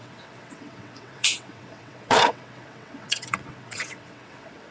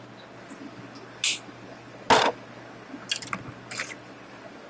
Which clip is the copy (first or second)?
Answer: first